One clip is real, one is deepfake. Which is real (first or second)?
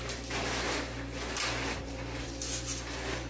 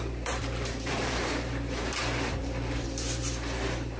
first